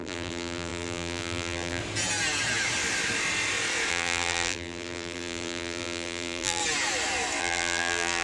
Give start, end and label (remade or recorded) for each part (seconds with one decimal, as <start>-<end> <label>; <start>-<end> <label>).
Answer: 0.0-1.8 remade; 1.8-3.9 recorded; 3.9-6.6 remade; 6.6-7.4 recorded; 7.4-8.2 remade